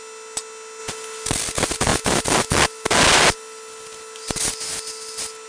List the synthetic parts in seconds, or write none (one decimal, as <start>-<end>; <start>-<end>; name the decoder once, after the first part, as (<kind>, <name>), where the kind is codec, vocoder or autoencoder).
none